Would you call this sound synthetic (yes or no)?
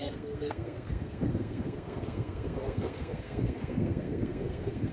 yes